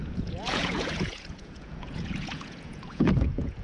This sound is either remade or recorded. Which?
remade